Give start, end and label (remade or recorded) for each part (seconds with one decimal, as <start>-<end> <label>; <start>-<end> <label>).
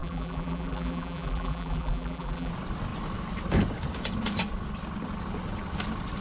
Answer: 0.0-2.5 remade; 2.5-6.2 recorded